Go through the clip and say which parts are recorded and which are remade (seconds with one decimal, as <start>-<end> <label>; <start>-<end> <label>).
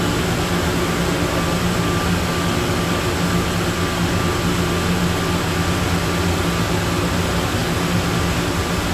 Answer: 0.0-8.9 recorded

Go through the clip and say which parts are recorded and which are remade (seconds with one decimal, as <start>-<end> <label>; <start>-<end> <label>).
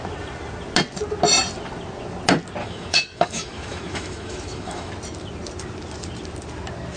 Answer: 0.0-2.6 recorded; 2.6-4.9 remade; 4.9-7.0 recorded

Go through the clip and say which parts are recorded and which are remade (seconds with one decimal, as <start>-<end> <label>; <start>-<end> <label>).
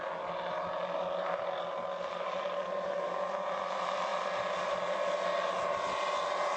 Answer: 0.0-6.6 recorded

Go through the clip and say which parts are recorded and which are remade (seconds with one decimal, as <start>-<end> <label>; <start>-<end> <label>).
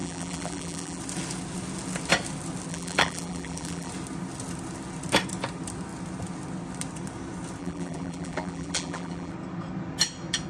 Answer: 0.0-1.0 remade; 1.0-2.7 recorded; 2.7-3.9 remade; 3.9-7.6 recorded; 7.6-9.3 remade; 9.3-10.5 recorded